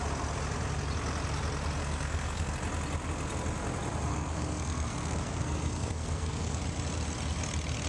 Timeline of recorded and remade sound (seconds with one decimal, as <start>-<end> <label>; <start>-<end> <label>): 0.0-1.8 recorded; 1.8-2.5 remade; 2.5-4.1 recorded; 4.1-6.6 remade; 6.6-7.9 recorded

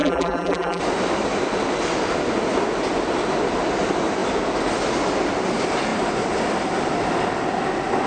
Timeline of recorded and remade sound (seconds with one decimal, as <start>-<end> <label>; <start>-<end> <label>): 0.0-0.8 remade; 0.8-8.1 recorded

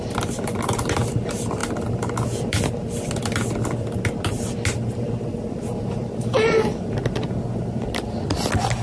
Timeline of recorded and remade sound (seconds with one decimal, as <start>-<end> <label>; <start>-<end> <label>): 0.0-8.8 recorded

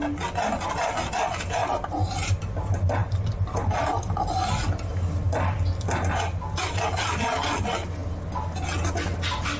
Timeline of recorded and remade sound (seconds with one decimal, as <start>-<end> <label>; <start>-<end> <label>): 0.0-3.0 recorded; 3.0-4.9 remade; 4.9-9.6 recorded

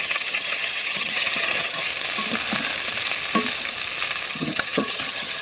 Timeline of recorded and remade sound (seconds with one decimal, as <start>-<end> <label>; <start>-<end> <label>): 0.0-1.9 remade; 1.9-4.3 recorded; 4.3-5.4 remade

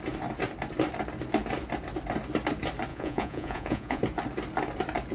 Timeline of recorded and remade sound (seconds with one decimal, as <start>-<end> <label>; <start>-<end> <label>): 0.0-2.9 recorded; 2.9-4.0 remade; 4.0-5.1 recorded

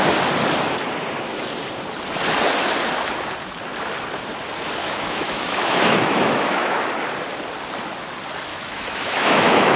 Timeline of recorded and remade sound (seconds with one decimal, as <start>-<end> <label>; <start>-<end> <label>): 0.0-4.8 recorded; 4.8-6.9 remade; 6.9-8.5 recorded; 8.5-9.8 remade

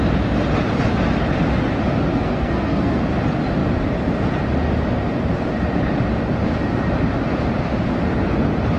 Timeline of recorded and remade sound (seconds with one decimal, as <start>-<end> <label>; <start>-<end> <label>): 0.0-2.1 recorded; 2.1-3.0 remade; 3.0-8.8 recorded